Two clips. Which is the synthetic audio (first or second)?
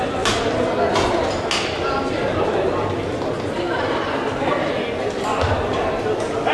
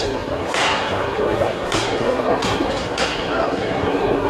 second